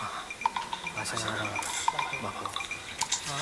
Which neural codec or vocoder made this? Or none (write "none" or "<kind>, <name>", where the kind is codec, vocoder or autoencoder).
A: none